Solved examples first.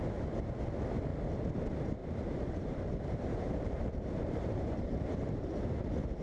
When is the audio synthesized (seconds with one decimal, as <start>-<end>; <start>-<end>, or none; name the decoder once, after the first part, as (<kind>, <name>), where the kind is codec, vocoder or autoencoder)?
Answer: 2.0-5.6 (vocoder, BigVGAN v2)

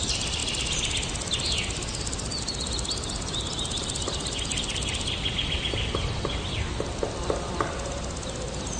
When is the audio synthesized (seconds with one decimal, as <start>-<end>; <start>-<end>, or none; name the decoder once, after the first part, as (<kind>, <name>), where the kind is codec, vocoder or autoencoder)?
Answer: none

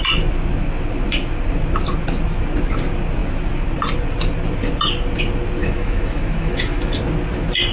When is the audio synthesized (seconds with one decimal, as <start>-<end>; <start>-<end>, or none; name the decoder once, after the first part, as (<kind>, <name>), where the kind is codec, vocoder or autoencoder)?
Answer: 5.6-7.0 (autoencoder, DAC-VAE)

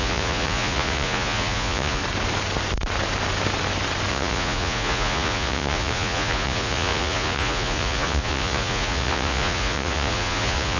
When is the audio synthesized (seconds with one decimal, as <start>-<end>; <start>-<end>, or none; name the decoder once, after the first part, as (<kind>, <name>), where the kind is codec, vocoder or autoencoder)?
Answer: 0.0-2.0 (vocoder, Vocos); 4.1-10.8

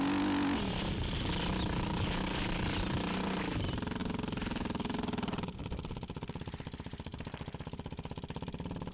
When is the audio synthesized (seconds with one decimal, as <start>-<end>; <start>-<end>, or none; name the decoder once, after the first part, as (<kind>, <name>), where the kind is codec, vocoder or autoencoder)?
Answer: none

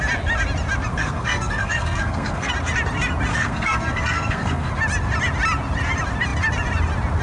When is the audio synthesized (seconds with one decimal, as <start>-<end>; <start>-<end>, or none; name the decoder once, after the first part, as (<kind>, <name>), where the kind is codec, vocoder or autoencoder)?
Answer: 0.9-2.5 (codec, SNAC); 3.3-4.7